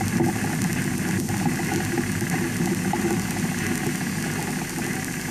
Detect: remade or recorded recorded